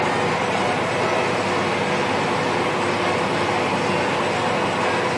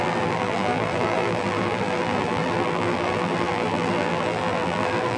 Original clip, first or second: first